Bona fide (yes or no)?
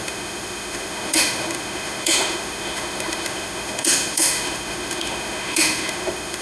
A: no